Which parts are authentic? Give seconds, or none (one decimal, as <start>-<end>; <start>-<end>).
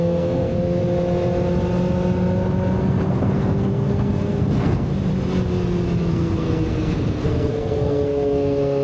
0.8-2.8; 4.9-6.1